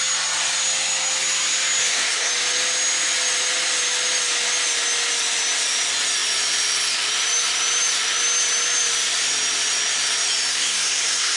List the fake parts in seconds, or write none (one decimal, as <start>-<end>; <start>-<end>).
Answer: 1.8-2.3; 10.5-11.4